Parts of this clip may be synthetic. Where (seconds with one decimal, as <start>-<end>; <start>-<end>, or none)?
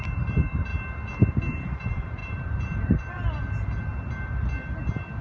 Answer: 0.0-0.7; 1.3-3.9